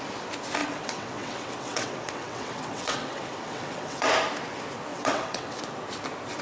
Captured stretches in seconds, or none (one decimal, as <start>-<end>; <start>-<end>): 0.0-0.6; 4.1-4.9; 5.6-6.4

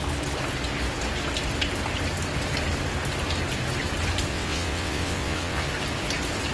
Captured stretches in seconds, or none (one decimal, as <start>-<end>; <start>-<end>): 0.0-4.3; 5.7-6.5

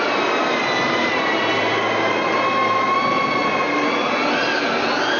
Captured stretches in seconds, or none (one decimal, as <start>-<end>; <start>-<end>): 0.0-5.2

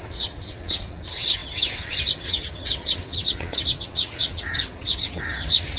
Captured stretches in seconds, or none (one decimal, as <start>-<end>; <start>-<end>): none